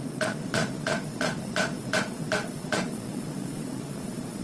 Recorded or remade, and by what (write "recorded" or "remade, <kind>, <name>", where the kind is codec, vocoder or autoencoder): remade, vocoder, Vocos